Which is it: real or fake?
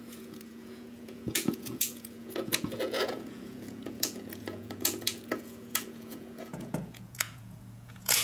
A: fake